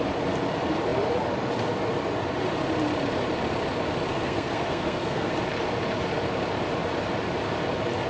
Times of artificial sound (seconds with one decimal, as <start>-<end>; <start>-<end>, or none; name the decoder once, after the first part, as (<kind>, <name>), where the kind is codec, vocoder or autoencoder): 4.1-5.3 (codec, SNAC)